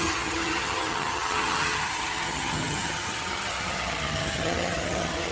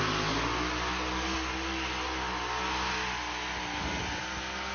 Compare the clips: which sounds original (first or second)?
second